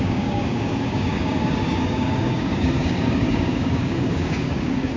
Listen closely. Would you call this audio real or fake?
fake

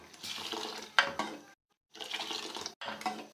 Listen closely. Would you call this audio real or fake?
real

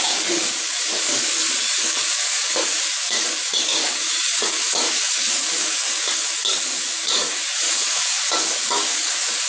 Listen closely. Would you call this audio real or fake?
fake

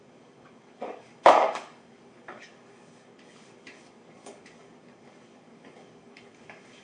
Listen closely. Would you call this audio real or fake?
fake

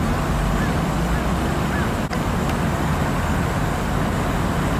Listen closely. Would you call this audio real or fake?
real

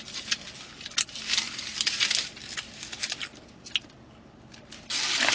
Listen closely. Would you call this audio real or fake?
real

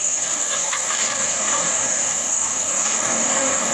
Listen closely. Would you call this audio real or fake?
fake